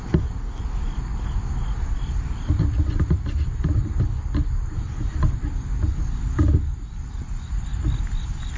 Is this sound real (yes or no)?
yes